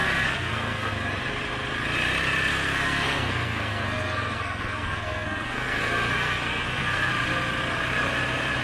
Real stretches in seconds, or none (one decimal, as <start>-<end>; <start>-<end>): 0.9-2.5; 7.1-8.6